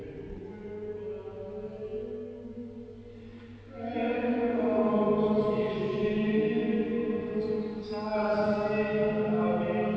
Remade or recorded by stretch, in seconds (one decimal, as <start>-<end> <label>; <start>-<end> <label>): 0.0-10.0 recorded